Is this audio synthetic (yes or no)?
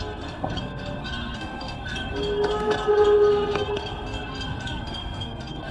yes